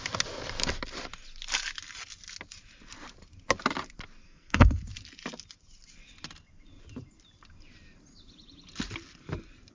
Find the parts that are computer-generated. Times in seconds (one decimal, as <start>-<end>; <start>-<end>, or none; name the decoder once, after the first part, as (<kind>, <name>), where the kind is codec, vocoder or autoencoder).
4.2-4.8 (codec, SNAC)

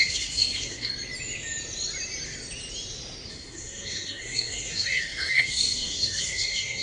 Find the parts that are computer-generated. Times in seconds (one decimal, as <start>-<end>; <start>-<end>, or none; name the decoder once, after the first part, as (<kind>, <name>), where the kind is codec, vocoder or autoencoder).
0.0-0.9 (codec, SNAC); 3.3-6.8

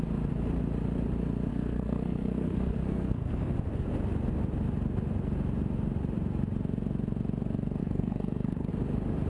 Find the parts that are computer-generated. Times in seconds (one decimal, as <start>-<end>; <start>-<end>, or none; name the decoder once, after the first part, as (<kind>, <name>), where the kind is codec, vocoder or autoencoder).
1.5-3.5 (codec, SNAC); 7.8-8.7